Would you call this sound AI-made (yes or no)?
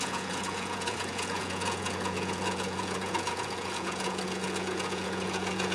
yes